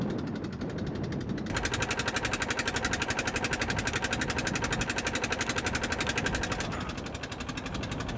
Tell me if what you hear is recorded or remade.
recorded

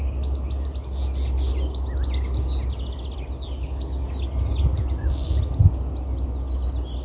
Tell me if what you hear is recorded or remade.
recorded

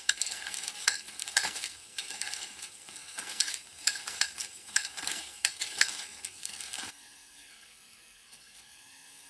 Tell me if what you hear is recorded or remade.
remade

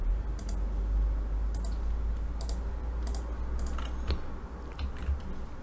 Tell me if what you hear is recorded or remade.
recorded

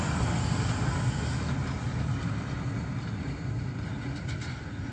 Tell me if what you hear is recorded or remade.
recorded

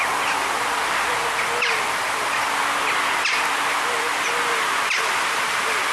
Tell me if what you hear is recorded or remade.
recorded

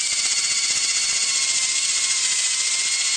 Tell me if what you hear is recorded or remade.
recorded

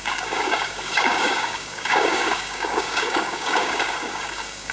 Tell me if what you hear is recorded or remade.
remade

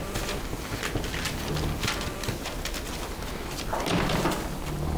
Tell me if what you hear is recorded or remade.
recorded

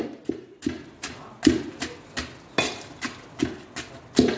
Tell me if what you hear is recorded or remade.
recorded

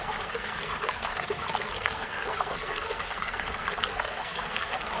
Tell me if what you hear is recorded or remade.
remade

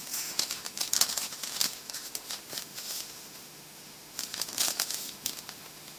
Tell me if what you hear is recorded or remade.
remade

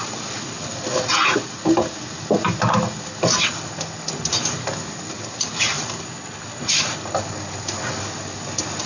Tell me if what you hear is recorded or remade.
recorded